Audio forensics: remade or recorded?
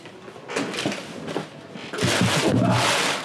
recorded